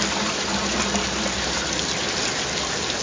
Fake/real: real